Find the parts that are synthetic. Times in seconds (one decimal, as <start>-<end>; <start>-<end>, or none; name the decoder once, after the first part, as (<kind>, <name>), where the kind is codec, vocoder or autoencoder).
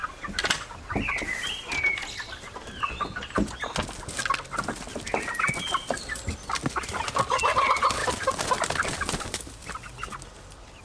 none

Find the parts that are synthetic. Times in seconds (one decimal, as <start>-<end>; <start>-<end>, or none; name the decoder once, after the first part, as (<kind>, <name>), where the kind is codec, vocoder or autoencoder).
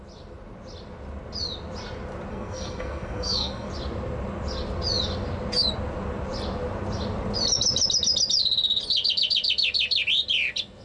2.3-3.7 (codec, SNAC)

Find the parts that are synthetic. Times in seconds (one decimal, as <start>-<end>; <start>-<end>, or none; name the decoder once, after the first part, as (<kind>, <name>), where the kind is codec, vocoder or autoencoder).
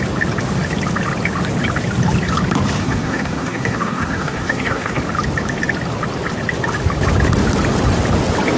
2.8-5.0 (codec, SNAC)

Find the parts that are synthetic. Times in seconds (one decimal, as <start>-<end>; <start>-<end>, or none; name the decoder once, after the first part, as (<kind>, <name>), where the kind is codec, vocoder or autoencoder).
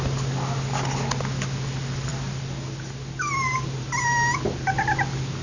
none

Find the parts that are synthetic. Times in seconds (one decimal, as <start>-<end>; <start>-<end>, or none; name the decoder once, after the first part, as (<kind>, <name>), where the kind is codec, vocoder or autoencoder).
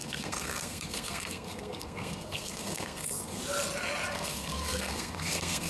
0.0-3.4 (codec, SNAC); 4.1-5.7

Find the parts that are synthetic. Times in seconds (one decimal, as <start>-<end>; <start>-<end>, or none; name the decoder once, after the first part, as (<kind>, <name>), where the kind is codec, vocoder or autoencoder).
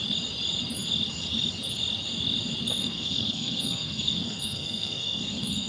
2.8-5.7 (codec, SNAC)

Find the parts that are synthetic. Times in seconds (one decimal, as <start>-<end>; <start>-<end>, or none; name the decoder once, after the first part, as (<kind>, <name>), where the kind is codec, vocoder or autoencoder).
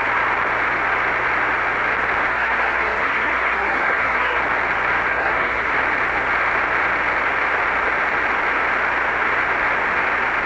2.3-4.4 (codec, SNAC); 5.1-5.7